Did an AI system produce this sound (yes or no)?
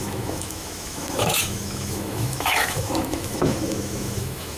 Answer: yes